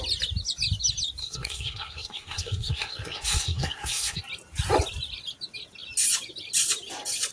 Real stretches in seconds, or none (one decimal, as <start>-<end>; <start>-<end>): 0.0-1.2; 4.2-7.3